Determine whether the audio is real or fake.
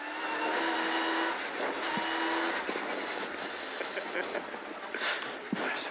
real